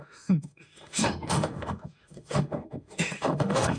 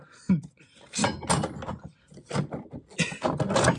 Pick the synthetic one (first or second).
first